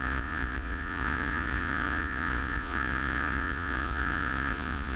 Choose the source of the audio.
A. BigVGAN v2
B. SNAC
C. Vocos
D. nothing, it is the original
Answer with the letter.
C